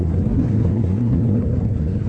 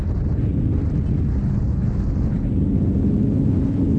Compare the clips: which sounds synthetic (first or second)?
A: first